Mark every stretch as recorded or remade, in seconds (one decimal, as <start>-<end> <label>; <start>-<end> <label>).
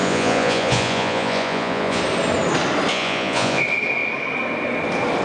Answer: 0.0-2.0 remade; 2.0-2.9 recorded; 2.9-3.6 remade; 3.6-5.2 recorded